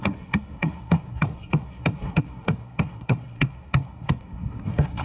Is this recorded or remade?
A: remade